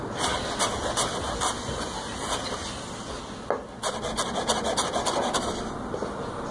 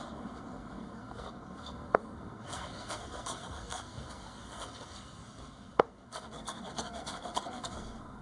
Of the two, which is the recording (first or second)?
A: first